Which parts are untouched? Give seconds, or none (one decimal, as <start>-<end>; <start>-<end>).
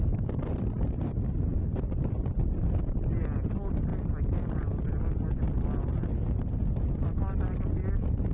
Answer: 0.0-8.3